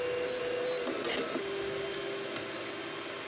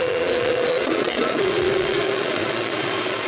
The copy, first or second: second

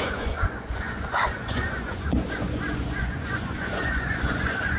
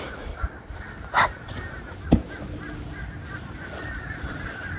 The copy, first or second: first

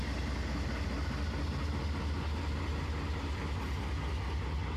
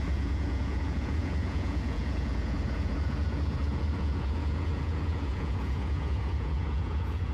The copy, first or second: second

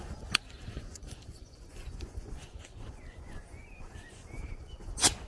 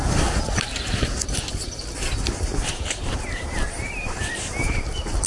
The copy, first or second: first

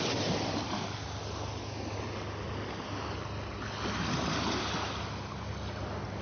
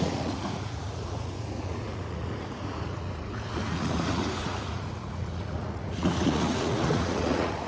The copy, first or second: second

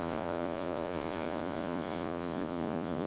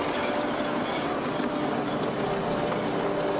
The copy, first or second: first